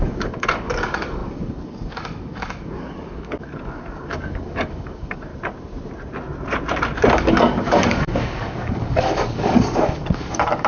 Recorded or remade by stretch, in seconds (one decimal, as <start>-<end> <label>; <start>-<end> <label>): 0.0-5.3 remade; 5.3-7.1 recorded; 7.1-10.7 remade